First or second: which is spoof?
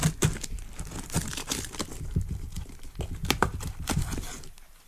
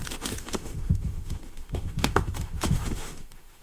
second